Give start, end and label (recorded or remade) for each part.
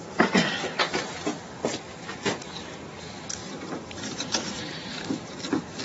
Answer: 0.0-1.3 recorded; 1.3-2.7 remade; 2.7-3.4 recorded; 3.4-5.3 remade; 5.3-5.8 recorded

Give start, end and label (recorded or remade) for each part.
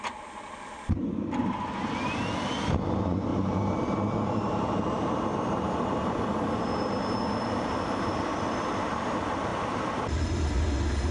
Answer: 0.0-3.3 recorded; 3.3-8.3 remade; 8.3-9.5 recorded; 9.5-10.1 remade; 10.1-11.1 recorded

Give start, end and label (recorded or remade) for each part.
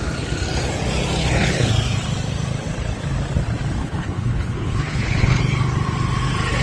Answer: 0.0-1.2 recorded; 1.2-1.7 remade; 1.7-3.8 recorded; 3.8-5.4 remade; 5.4-6.6 recorded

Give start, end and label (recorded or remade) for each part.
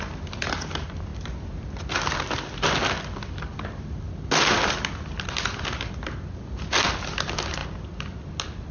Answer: 0.0-8.7 recorded